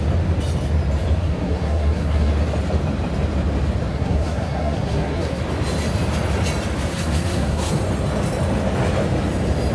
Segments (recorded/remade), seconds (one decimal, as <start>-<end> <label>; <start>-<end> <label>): 0.0-1.2 recorded; 1.2-2.3 remade; 2.3-3.9 recorded; 3.9-5.4 remade; 5.4-6.9 recorded; 6.9-7.7 remade; 7.7-9.7 recorded